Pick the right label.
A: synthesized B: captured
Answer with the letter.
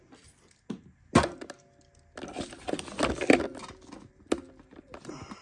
B